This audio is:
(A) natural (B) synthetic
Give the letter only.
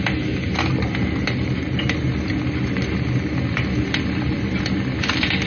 A